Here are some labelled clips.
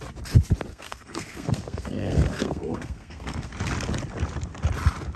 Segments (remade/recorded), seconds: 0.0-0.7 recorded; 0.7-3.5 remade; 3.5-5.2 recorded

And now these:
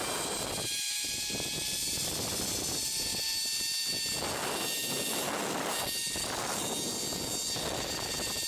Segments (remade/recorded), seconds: 0.0-8.5 recorded

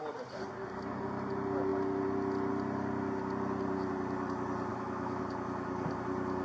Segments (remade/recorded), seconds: 0.0-4.7 recorded; 4.7-5.2 remade; 5.2-6.4 recorded

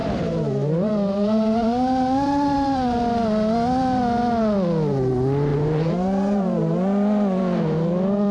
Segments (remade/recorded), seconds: 0.0-4.0 remade; 4.0-5.5 recorded; 5.5-7.4 remade; 7.4-8.3 recorded

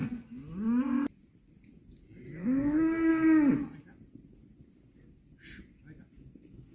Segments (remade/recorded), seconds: 0.0-2.4 recorded; 2.4-3.1 remade; 3.1-6.1 recorded; 6.1-6.7 remade